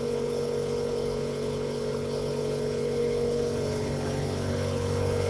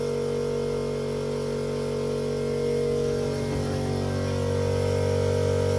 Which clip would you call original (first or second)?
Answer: second